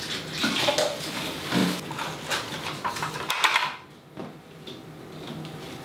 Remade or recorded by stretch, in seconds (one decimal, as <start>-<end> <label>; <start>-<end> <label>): 0.0-0.4 recorded; 0.4-1.2 remade; 1.2-1.6 recorded; 1.6-3.3 remade; 3.3-4.2 recorded; 4.2-4.7 remade; 4.7-5.8 recorded